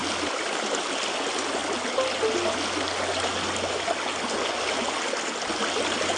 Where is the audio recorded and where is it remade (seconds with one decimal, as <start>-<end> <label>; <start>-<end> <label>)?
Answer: 0.0-0.6 remade; 0.6-6.2 recorded